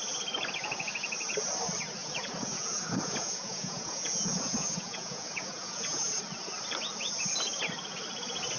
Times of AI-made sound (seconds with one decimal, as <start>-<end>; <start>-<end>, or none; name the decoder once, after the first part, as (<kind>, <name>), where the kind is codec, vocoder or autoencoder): 2.0-6.2 (vocoder, Vocos)